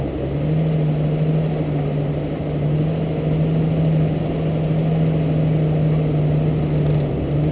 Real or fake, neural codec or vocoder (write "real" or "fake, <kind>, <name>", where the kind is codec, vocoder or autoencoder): real